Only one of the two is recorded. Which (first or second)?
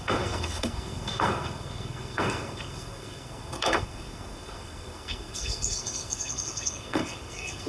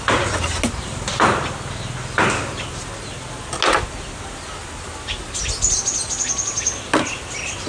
second